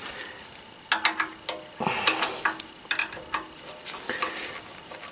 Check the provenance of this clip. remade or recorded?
recorded